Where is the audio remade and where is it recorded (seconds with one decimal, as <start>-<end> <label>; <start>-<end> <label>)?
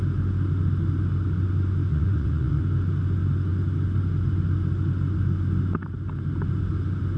0.0-1.9 recorded; 1.9-2.6 remade; 2.6-7.2 recorded